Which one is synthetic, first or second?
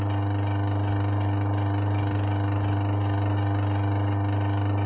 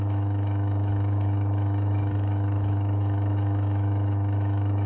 second